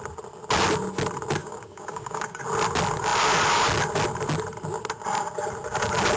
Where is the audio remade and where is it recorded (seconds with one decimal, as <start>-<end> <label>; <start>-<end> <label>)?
0.0-1.4 recorded; 1.4-2.4 remade; 2.4-6.2 recorded